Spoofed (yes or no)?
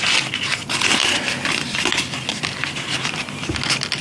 no